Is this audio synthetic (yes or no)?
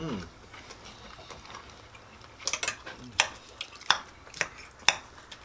no